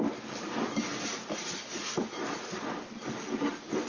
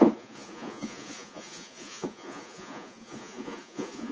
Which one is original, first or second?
first